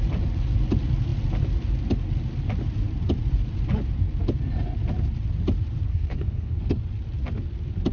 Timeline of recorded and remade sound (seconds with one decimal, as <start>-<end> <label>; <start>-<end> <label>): 0.0-5.9 recorded; 5.9-6.8 remade; 6.8-7.9 recorded